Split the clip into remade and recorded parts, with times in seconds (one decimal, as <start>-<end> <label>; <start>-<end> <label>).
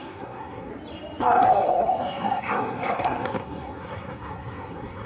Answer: 0.0-0.7 remade; 0.7-1.2 recorded; 1.2-5.1 remade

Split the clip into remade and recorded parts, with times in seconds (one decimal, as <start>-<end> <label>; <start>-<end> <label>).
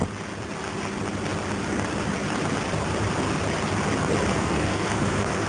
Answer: 0.0-4.3 recorded; 4.3-5.5 remade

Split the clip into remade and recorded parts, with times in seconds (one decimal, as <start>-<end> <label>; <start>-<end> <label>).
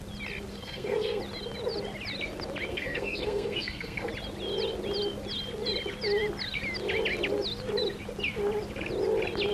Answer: 0.0-0.5 recorded; 0.5-1.2 remade; 1.2-2.7 recorded; 2.7-4.1 remade; 4.1-9.5 recorded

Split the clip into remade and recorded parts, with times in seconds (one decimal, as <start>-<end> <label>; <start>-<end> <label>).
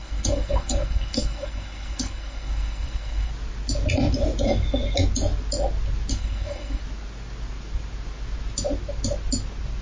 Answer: 0.0-3.3 remade; 3.3-6.1 recorded; 6.1-6.8 remade; 6.8-9.8 recorded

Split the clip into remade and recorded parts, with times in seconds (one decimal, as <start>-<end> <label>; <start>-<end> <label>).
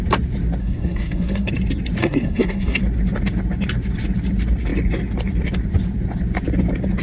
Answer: 0.0-0.6 recorded; 0.6-1.5 remade; 1.5-2.0 recorded; 2.0-2.8 remade; 2.8-7.0 recorded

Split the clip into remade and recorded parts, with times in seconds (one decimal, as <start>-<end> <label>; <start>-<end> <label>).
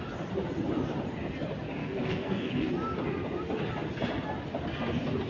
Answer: 0.0-1.8 recorded; 1.8-2.7 remade; 2.7-5.3 recorded